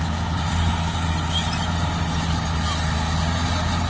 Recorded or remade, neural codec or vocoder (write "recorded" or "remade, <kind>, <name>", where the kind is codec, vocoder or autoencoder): recorded